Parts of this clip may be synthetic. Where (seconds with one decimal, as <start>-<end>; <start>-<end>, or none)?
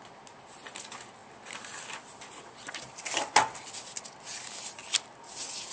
none